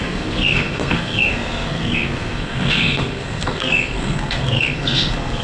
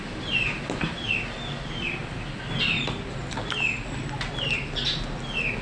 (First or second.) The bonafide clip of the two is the second